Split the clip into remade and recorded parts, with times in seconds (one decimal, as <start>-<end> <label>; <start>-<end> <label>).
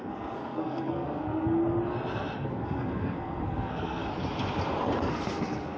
0.0-1.6 remade; 1.6-2.4 recorded; 2.4-4.0 remade; 4.0-5.0 recorded; 5.0-5.8 remade